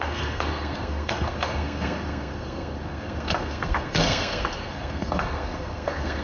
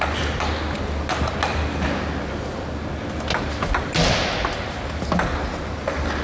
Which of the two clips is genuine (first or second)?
second